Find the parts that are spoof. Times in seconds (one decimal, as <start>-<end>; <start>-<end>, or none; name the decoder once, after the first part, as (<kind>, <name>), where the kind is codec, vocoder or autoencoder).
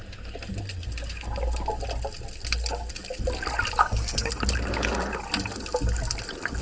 3.8-4.3 (codec, SNAC)